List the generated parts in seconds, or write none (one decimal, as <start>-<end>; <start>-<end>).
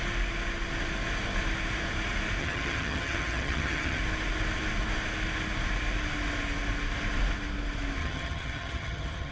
2.4-4.0; 8.0-9.3